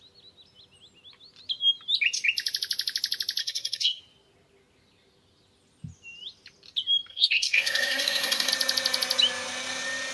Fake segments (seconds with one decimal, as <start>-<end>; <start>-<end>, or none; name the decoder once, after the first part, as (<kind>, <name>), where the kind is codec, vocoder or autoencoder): 3.4-4.0 (codec, SNAC); 7.1-8.5